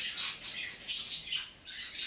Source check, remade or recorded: recorded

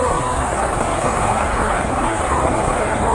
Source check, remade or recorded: remade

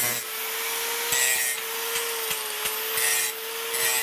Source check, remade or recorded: recorded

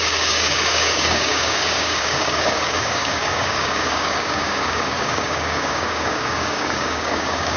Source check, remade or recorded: remade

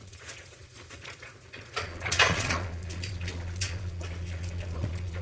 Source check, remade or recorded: remade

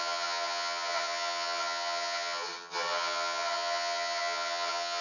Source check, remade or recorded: remade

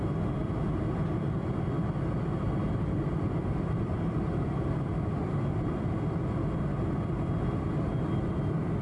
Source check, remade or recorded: recorded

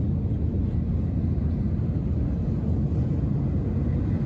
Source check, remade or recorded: recorded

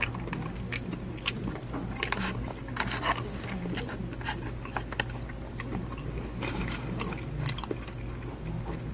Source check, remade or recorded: recorded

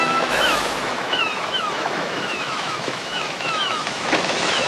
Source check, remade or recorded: remade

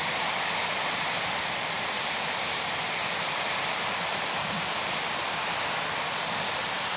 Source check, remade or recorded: remade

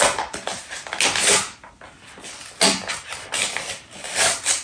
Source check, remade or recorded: recorded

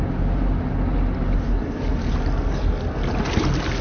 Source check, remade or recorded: recorded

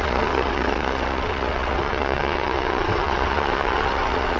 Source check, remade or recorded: remade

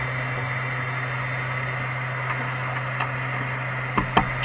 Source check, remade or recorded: recorded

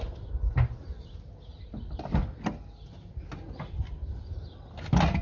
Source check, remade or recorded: recorded